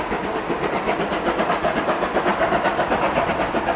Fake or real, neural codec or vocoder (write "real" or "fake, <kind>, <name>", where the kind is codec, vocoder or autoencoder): real